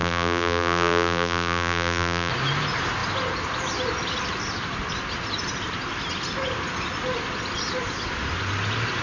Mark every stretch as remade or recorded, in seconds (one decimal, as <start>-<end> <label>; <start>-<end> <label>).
0.0-2.3 remade; 2.3-9.0 recorded